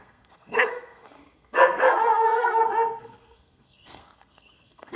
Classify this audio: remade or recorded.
remade